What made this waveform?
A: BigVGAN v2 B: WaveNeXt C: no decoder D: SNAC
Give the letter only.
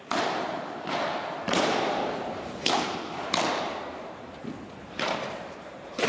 A